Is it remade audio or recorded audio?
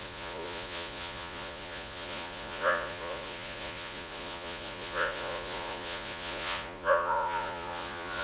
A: remade